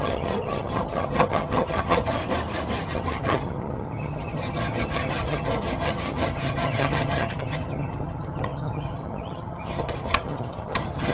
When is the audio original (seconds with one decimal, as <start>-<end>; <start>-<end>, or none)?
2.2-2.9